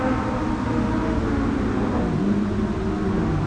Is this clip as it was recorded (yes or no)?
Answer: yes